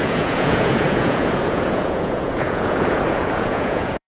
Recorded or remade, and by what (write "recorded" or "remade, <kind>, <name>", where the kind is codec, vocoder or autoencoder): remade, vocoder, Vocos